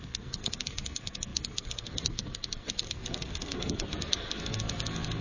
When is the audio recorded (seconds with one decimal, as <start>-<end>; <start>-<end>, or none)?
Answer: none